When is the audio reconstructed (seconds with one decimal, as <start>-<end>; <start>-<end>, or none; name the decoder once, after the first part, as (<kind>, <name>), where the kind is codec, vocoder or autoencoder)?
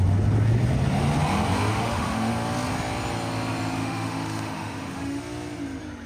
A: 1.7-2.3 (autoencoder, DAC-VAE); 3.8-5.2